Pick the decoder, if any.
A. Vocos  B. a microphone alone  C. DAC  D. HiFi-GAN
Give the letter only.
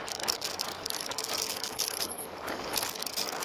C